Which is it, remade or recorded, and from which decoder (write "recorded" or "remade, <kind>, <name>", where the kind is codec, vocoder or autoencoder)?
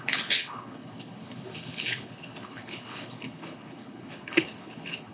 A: remade, codec, HILCodec